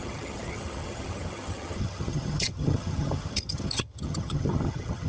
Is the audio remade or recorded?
remade